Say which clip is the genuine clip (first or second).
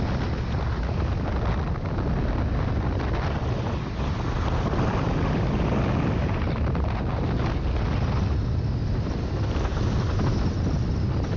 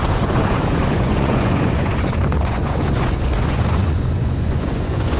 first